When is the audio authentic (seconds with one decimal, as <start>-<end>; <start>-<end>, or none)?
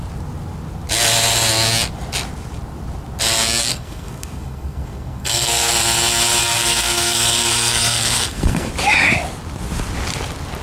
0.0-3.6; 5.7-6.4; 8.7-10.6